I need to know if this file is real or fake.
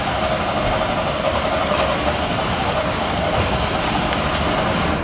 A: real